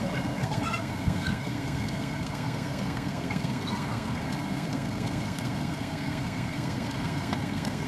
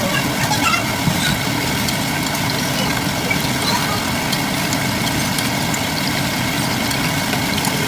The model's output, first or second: first